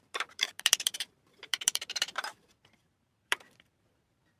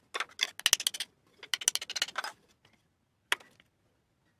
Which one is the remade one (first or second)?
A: first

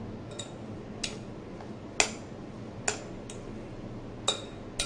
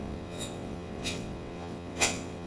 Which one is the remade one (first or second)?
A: second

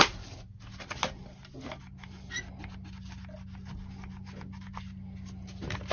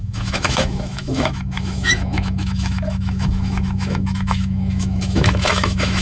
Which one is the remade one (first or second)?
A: second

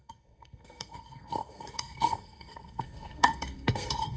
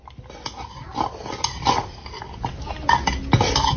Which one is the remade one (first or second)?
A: first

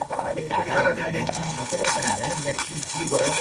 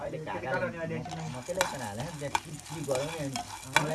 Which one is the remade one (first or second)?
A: first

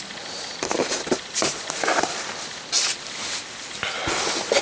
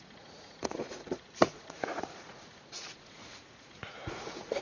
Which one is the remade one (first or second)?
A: second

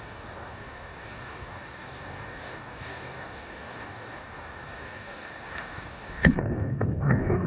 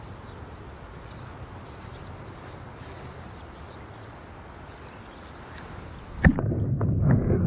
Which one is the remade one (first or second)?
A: first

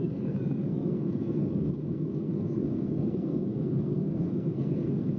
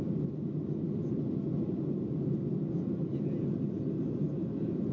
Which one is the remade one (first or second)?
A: first